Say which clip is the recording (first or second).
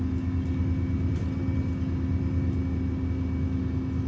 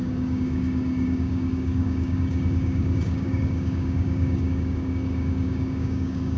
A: first